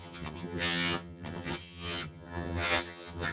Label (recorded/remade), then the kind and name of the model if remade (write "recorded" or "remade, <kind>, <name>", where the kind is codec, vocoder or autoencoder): remade, vocoder, HiFi-GAN